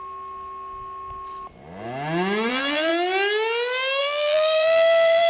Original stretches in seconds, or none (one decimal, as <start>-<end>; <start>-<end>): 0.0-2.5; 2.9-4.0